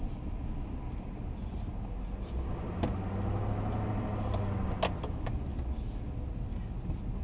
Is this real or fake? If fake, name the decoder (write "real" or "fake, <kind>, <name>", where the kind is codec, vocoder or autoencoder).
real